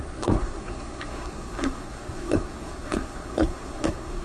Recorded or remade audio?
remade